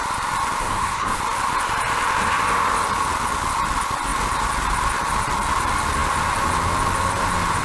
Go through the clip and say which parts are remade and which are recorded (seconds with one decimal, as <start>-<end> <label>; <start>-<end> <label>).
0.0-0.6 recorded; 0.6-1.2 remade; 1.2-7.6 recorded